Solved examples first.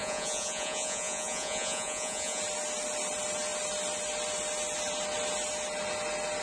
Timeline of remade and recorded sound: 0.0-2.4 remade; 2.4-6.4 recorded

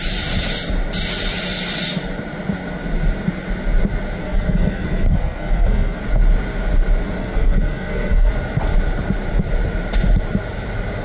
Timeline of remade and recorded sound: 0.0-4.2 recorded; 4.2-6.0 remade; 6.0-7.2 recorded; 7.2-8.3 remade; 8.3-11.0 recorded

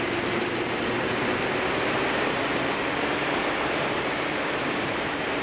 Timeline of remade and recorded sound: 0.0-2.4 remade; 2.4-3.4 recorded; 3.4-5.4 remade